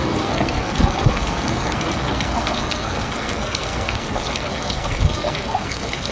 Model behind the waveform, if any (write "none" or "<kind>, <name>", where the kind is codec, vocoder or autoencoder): codec, SNAC